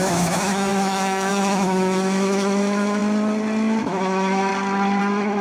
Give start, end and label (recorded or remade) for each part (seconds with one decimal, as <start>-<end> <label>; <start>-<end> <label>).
0.0-3.0 remade; 3.0-3.8 recorded; 3.8-4.5 remade; 4.5-5.0 recorded; 5.0-5.4 remade